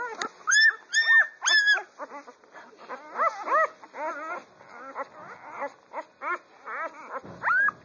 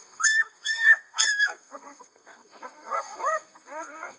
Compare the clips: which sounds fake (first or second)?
second